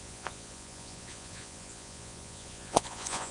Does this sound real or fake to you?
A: fake